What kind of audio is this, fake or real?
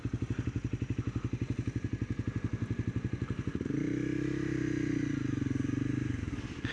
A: real